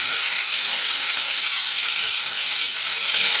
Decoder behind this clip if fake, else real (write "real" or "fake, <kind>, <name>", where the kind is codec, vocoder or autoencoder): fake, codec, DAC